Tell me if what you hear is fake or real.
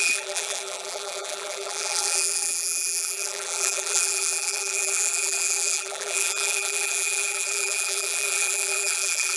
fake